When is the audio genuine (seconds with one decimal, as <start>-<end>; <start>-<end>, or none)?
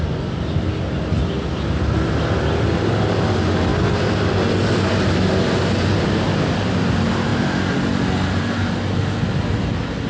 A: 0.0-10.1